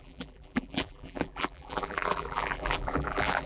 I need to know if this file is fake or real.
fake